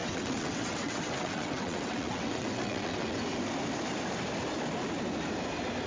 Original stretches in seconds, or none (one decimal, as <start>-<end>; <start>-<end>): 3.1-5.9